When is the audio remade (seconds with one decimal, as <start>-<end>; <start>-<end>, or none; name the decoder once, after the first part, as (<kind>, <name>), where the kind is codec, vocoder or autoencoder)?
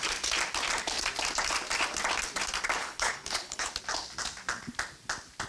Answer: 2.8-3.7 (codec, HILCodec)